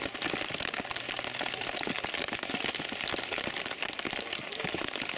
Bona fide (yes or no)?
yes